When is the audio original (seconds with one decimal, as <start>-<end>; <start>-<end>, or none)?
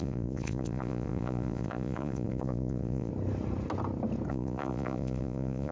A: 3.1-4.3